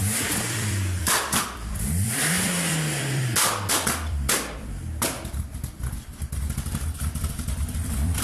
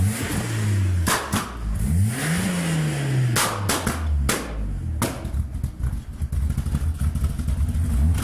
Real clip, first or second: second